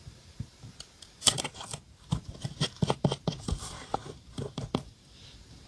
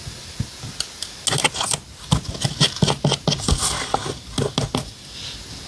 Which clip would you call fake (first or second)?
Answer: first